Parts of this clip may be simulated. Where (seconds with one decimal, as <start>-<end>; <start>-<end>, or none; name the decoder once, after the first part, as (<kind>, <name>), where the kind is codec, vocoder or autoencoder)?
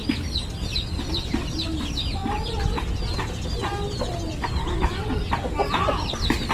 none